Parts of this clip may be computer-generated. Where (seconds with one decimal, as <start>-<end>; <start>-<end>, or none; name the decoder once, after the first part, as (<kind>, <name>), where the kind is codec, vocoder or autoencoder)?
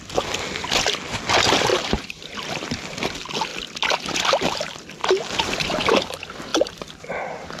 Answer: 1.7-2.5 (vocoder, BigVGAN v2); 5.0-6.0; 6.5-7.6